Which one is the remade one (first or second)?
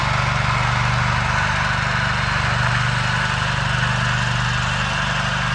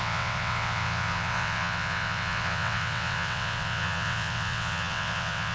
second